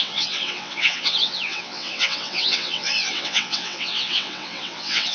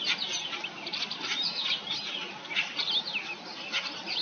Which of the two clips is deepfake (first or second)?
first